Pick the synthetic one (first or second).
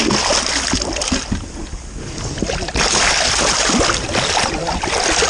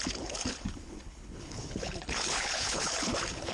second